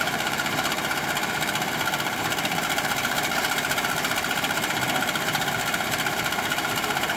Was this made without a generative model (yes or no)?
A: no